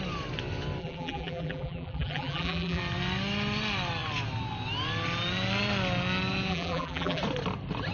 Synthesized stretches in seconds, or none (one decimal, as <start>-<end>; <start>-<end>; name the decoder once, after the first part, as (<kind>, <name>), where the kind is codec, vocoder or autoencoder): 0.8-2.8 (vocoder, BigVGAN v2); 6.5-7.2